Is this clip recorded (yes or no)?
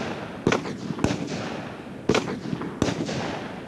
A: yes